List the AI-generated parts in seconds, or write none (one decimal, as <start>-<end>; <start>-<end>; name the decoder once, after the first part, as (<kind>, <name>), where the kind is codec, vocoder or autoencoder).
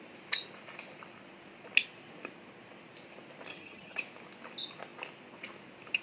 3.5-4.0 (vocoder, HiFi-GAN)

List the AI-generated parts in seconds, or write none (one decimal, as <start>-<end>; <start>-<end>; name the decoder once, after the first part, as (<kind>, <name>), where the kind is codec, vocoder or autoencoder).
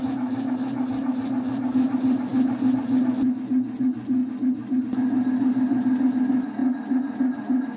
none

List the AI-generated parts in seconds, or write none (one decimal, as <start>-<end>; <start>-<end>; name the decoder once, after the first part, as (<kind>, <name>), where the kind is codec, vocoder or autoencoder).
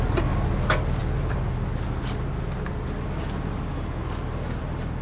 none